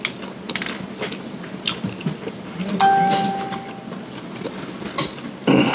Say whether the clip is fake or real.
real